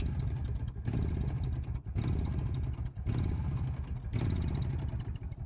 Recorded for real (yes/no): yes